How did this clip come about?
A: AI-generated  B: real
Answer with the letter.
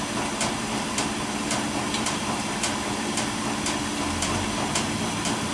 A